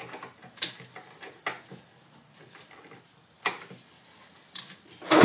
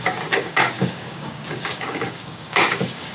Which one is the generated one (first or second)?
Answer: second